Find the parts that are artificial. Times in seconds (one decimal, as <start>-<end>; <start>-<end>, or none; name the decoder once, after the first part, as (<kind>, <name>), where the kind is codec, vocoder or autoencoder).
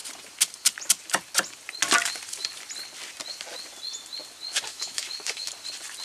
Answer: 4.7-5.5 (autoencoder, DAC-VAE)